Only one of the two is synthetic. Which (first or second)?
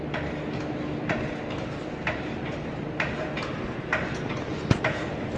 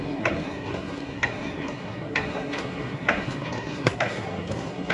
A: second